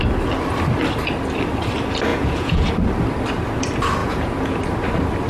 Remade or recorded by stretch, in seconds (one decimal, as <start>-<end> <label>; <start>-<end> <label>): 0.0-2.1 recorded; 2.1-2.7 remade; 2.7-4.0 recorded; 4.0-4.6 remade; 4.6-5.3 recorded

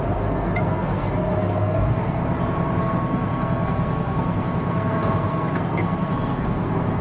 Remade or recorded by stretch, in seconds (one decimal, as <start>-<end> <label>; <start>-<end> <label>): 0.0-2.2 remade; 2.2-2.8 recorded; 2.8-7.0 remade